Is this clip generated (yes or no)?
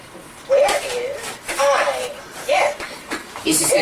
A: yes